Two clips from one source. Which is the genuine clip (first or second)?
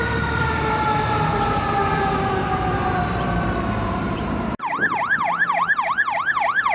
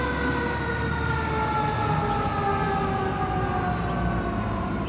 second